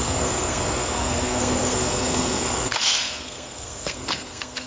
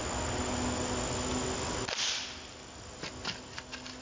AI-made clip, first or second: first